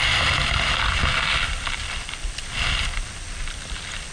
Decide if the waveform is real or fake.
real